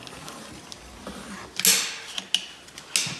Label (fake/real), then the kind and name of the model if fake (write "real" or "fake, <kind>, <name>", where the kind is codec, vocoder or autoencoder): real